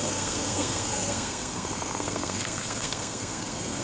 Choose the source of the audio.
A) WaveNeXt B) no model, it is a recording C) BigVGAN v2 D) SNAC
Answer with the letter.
D